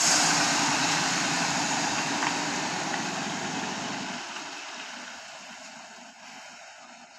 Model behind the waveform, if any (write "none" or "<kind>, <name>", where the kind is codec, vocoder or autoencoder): none